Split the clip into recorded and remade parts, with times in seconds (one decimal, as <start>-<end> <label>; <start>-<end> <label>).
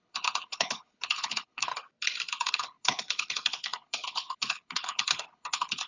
0.0-1.7 remade; 1.7-2.5 recorded; 2.5-5.9 remade